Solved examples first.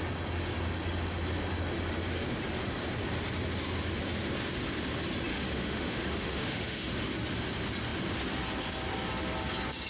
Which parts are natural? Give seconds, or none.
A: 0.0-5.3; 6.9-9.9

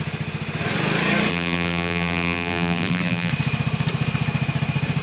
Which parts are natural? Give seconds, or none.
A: 0.0-1.3; 3.3-5.0

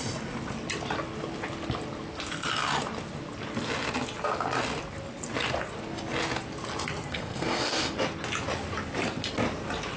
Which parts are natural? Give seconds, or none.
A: 0.0-7.1; 7.9-10.0

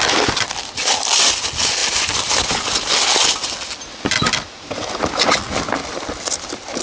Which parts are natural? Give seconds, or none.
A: 0.0-6.8

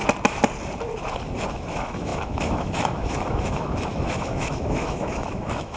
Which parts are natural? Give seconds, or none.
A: 0.0-1.5

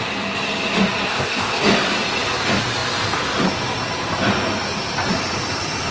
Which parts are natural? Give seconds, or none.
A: 0.0-1.1; 1.6-5.9

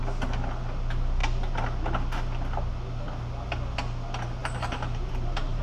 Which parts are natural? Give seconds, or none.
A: 0.0-4.4